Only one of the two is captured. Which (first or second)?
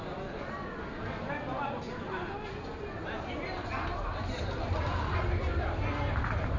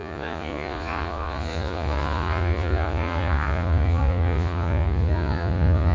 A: first